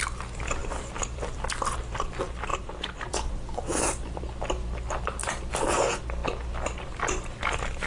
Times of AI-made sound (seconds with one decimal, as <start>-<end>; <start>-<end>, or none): 0.6-1.4; 2.5-4.2; 5.2-5.7